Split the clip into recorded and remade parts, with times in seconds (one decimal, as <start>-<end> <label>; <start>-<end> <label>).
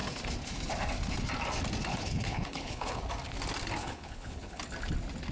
0.0-1.9 recorded; 1.9-3.0 remade; 3.0-3.8 recorded; 3.8-4.6 remade; 4.6-5.3 recorded